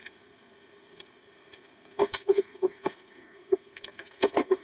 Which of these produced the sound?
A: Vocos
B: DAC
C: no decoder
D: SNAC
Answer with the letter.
D